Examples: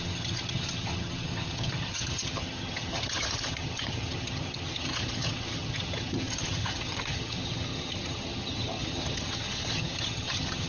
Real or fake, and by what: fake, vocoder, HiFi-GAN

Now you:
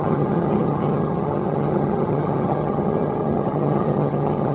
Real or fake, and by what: fake, vocoder, HiFi-GAN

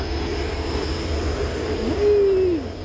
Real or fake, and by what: real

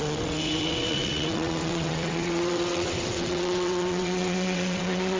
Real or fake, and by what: fake, vocoder, WaveNeXt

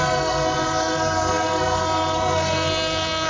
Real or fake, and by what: fake, codec, SNAC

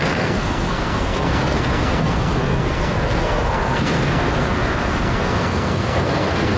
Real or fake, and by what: fake, codec, SNAC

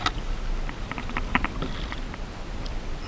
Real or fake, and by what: real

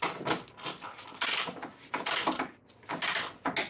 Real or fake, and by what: real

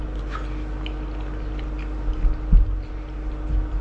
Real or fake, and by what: real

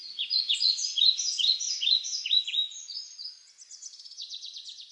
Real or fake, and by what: fake, vocoder, Vocos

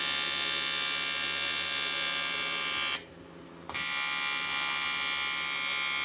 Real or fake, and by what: real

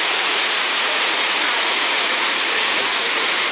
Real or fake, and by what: fake, vocoder, Vocos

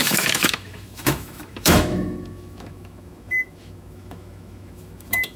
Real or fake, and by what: fake, autoencoder, DAC-VAE